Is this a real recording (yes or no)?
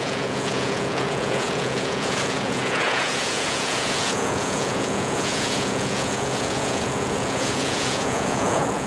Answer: no